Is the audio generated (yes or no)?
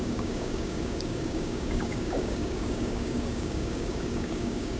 yes